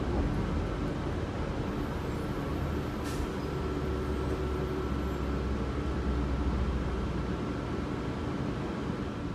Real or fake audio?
real